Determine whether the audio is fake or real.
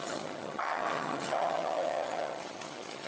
fake